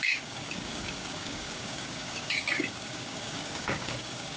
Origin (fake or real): fake